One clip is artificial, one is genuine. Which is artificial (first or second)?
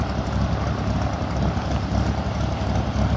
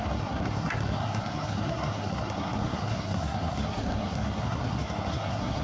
second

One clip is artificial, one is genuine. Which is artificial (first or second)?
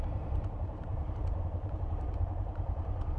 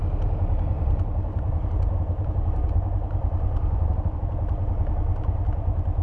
first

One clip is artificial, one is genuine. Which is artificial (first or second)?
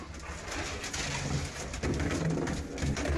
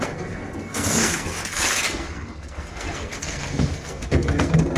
second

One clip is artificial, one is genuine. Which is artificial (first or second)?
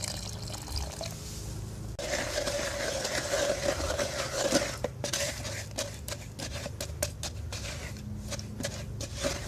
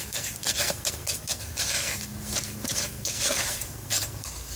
second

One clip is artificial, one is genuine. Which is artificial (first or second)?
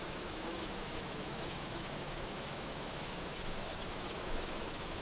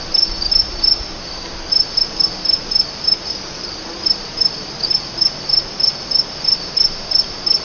first